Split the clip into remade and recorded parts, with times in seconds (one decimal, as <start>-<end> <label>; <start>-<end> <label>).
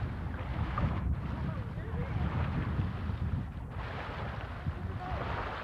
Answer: 0.0-0.5 recorded; 0.5-1.1 remade; 1.1-5.6 recorded